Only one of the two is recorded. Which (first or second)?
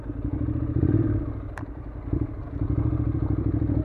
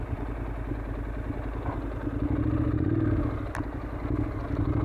second